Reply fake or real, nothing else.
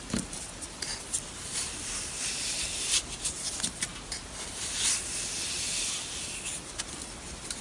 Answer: real